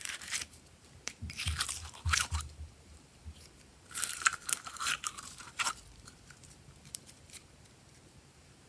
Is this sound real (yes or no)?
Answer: no